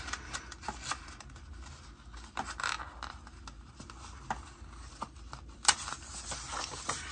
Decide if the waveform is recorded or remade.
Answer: recorded